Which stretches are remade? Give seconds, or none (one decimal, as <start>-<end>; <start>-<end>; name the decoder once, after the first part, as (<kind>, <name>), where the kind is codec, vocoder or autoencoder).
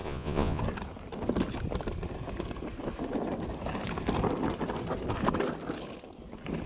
0.0-0.6 (vocoder, Vocos)